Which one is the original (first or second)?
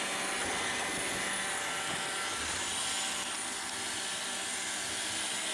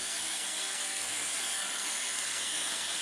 first